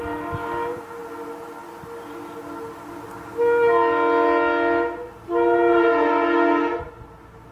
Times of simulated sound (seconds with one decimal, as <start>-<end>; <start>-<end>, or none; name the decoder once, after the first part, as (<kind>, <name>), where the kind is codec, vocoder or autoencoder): none